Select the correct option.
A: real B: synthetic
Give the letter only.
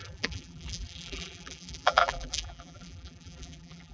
B